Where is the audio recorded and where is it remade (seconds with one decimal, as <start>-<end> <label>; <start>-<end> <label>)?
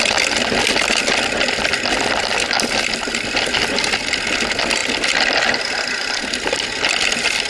0.0-7.5 recorded